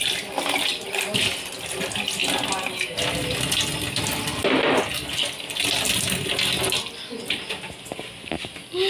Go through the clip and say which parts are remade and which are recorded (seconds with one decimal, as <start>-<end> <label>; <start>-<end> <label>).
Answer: 0.0-8.9 recorded

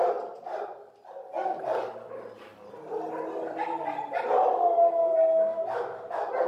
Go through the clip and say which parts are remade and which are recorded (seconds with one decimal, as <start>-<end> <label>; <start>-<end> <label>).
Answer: 0.0-6.5 recorded

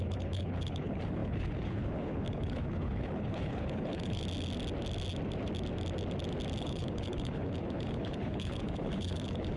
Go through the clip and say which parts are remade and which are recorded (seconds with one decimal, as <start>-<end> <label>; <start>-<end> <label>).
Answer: 0.0-4.2 remade; 4.2-6.6 recorded; 6.6-9.6 remade

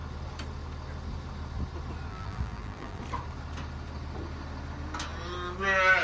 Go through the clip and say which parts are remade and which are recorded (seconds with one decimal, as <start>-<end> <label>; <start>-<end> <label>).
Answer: 0.0-2.1 recorded; 2.1-3.0 remade; 3.0-6.0 recorded

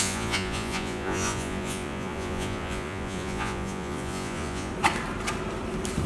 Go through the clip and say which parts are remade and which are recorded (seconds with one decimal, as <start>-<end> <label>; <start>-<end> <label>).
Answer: 0.0-4.7 remade; 4.7-6.1 recorded